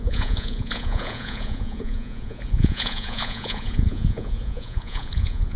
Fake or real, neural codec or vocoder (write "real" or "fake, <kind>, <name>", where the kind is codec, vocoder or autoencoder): fake, vocoder, Vocos